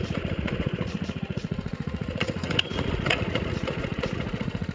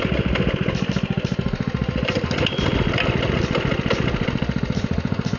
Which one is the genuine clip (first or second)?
second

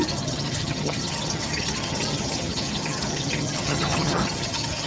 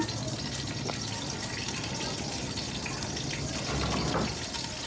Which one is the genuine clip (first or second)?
second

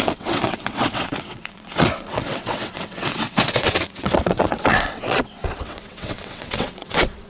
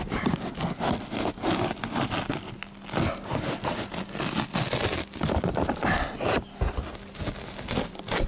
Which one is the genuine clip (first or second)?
second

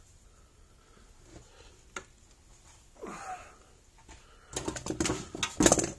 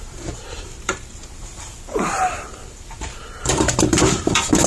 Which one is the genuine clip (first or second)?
first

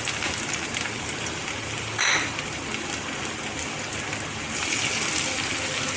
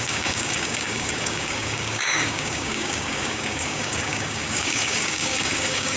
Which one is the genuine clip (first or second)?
first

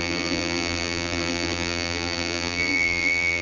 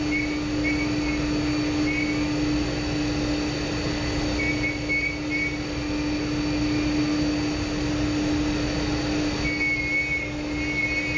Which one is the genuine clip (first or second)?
second